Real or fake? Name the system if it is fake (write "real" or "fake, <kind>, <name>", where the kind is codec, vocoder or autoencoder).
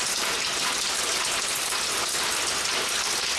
real